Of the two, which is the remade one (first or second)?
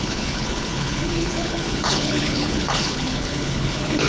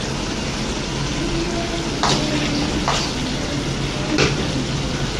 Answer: first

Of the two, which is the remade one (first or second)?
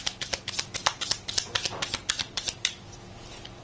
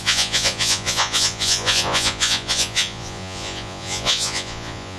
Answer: second